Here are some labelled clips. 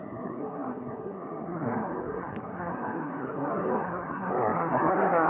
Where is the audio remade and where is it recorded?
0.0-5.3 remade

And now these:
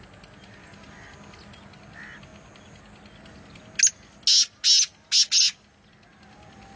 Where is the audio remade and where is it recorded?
0.0-6.8 recorded

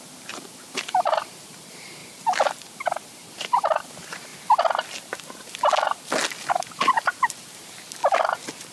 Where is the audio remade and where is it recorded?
0.0-2.0 remade; 2.0-2.5 recorded; 2.5-4.3 remade; 4.3-6.5 recorded; 6.5-8.0 remade; 8.0-8.7 recorded

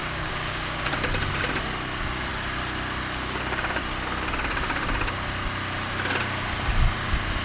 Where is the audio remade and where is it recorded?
0.0-0.9 remade; 0.9-7.4 recorded

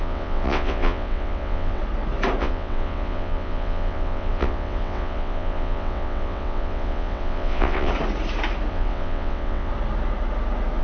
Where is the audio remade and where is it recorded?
0.0-1.8 remade; 1.8-2.4 recorded; 2.4-7.9 remade; 7.9-8.7 recorded; 8.7-9.7 remade; 9.7-10.8 recorded

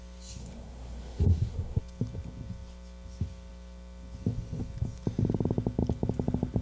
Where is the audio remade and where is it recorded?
0.0-0.4 recorded; 0.4-1.8 remade; 1.8-6.6 recorded

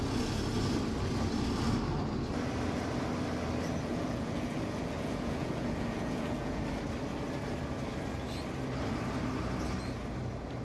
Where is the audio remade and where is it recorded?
0.0-3.9 recorded; 3.9-6.6 remade; 6.6-10.6 recorded